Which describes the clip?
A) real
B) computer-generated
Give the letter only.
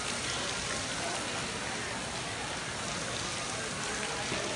A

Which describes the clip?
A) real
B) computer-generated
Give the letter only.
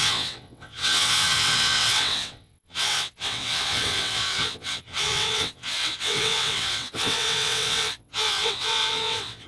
B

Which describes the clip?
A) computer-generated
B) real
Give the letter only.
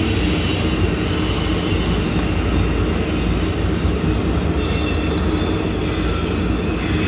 B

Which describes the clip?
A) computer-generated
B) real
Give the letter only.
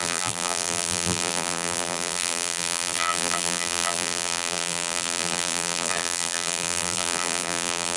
A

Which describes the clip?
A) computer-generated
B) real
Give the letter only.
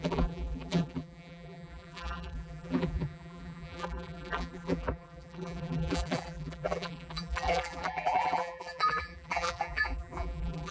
A